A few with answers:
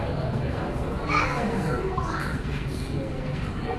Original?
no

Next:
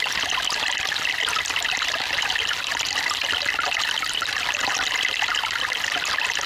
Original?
yes